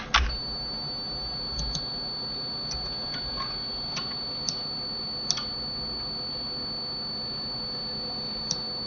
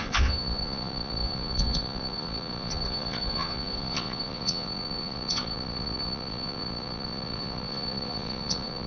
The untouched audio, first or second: first